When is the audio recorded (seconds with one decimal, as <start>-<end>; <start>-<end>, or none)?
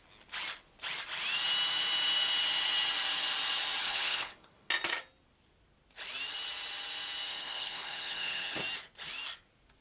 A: 0.0-3.8; 4.7-7.3; 8.6-9.8